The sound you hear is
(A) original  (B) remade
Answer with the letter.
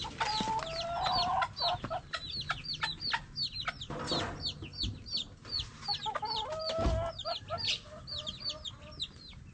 A